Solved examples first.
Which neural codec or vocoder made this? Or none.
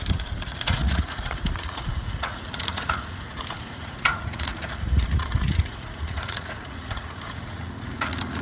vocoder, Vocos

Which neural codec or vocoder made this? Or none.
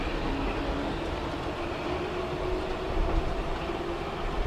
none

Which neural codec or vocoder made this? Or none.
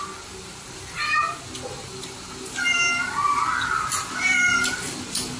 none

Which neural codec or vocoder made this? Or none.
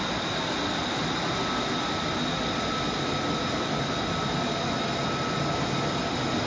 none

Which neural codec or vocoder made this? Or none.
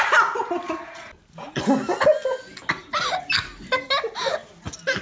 none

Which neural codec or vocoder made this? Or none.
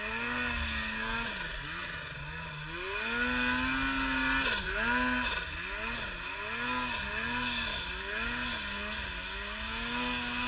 none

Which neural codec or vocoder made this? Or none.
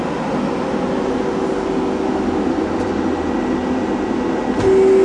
none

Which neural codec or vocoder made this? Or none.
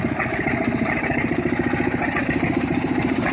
none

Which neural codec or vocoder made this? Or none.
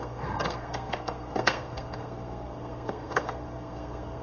codec, SNAC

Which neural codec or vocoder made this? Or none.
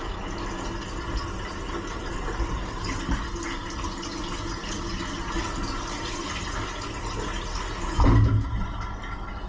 none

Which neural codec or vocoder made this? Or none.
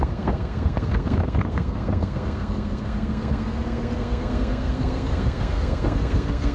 codec, SNAC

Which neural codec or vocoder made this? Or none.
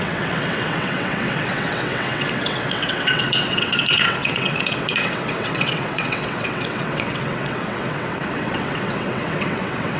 vocoder, WaveNeXt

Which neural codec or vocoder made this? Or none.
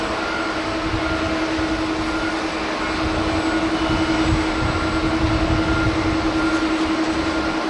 none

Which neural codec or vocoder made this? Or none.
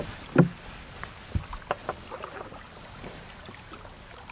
none